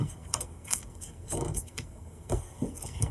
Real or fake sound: fake